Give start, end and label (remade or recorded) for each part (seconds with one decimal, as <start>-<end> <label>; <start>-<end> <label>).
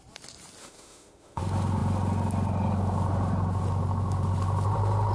0.0-0.6 recorded; 0.6-1.4 remade; 1.4-5.1 recorded